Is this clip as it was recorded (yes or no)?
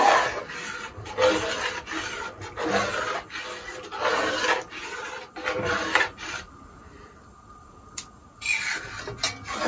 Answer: yes